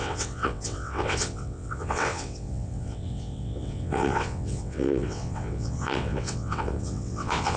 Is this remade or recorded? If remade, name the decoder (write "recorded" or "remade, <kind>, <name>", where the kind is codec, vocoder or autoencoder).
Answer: remade, vocoder, WaveNeXt